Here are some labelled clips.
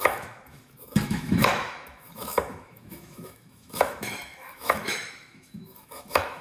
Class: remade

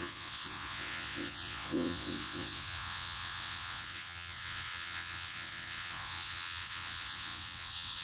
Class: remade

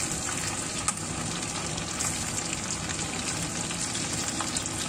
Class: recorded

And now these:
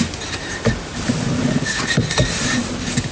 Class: recorded